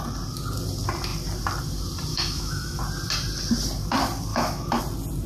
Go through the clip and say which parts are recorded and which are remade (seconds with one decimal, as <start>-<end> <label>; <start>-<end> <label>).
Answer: 0.0-2.1 recorded; 2.1-2.8 remade; 2.8-4.3 recorded; 4.3-4.8 remade; 4.8-5.3 recorded